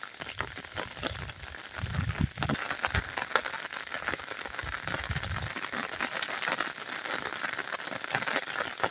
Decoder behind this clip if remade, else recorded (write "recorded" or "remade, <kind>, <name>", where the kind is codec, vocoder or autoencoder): recorded